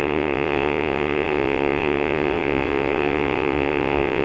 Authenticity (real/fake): fake